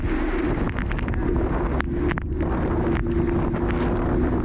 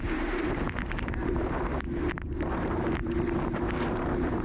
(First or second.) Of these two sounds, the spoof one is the second